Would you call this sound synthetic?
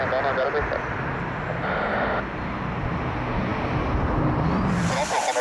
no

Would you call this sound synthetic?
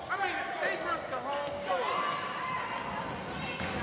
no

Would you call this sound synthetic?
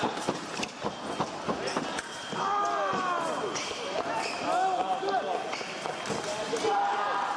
no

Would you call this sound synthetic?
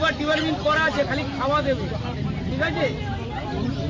no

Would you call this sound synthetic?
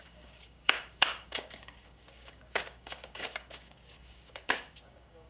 yes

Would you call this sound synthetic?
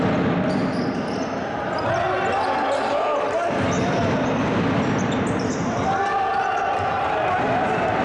no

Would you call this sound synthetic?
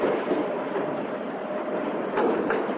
no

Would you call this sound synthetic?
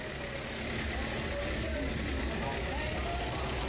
no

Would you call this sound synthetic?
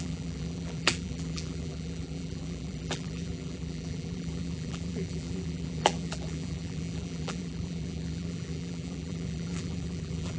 yes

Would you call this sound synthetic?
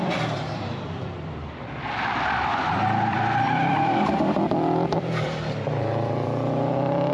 yes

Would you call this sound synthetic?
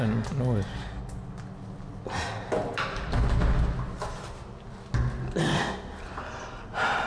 no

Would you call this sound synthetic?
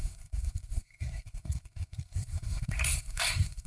yes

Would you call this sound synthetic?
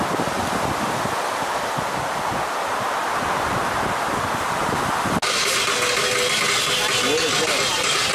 no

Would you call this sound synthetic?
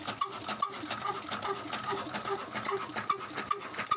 no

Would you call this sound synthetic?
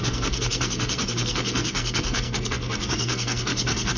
yes